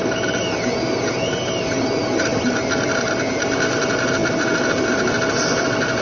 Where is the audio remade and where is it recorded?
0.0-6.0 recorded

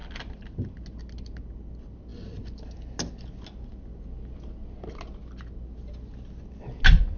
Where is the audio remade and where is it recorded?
0.0-7.2 recorded

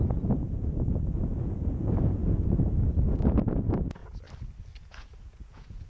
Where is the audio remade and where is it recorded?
0.0-4.0 remade; 4.0-4.8 recorded; 4.8-5.9 remade

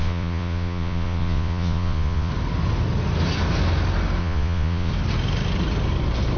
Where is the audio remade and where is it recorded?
0.0-2.3 remade; 2.3-4.2 recorded; 4.2-4.9 remade; 4.9-6.4 recorded